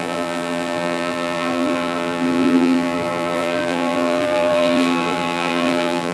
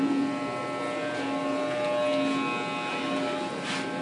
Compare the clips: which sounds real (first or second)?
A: second